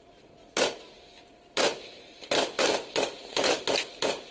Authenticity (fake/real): real